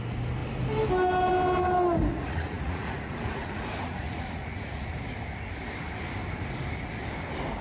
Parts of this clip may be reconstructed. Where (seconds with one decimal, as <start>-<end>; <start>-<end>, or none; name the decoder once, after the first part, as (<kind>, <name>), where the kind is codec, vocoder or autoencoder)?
2.1-4.9 (vocoder, Vocos)